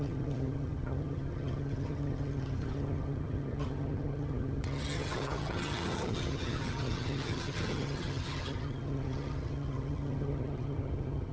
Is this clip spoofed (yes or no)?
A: yes